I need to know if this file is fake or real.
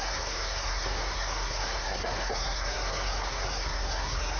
fake